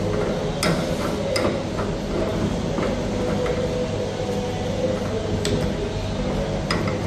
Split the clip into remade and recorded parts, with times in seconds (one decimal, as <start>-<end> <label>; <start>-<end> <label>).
0.0-7.1 recorded